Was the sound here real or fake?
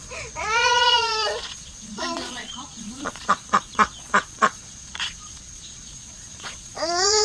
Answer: fake